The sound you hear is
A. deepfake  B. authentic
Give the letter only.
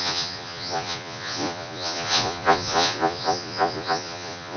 A